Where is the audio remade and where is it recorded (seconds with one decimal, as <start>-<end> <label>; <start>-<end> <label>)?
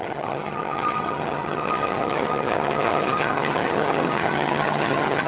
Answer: 0.0-5.3 remade